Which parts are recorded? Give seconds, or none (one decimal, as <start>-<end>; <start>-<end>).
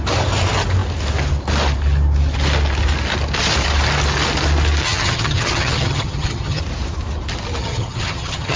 0.0-4.8; 6.6-7.6